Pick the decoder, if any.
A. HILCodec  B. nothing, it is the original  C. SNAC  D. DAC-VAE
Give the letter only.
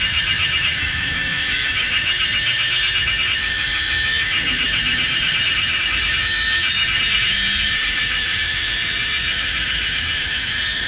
D